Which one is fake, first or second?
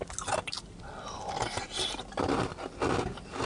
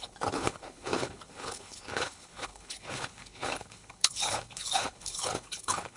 second